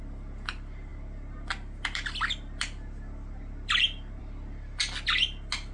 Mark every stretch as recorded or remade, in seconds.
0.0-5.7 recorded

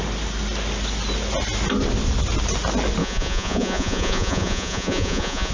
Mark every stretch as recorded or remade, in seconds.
0.0-3.0 recorded; 3.0-5.5 remade

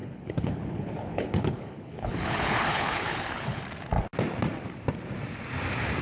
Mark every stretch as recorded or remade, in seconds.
0.0-3.6 remade; 3.6-6.0 recorded

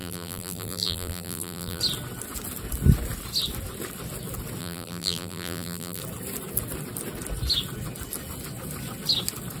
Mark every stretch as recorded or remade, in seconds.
0.0-1.8 remade; 1.8-4.6 recorded; 4.6-6.0 remade; 6.0-9.6 recorded

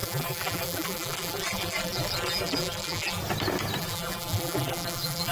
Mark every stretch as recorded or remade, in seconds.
0.0-3.2 remade; 3.2-3.8 recorded; 3.8-5.3 remade

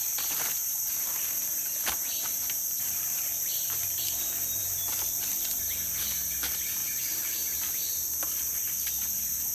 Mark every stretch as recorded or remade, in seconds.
0.0-0.6 recorded; 0.6-5.3 remade; 5.3-6.8 recorded; 6.8-8.5 remade; 8.5-9.5 recorded

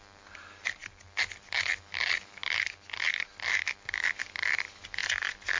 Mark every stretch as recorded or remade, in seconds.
0.0-5.6 recorded